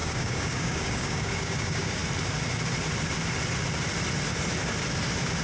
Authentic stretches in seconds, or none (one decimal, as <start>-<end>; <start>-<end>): 2.0-5.4